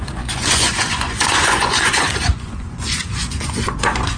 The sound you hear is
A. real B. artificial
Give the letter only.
B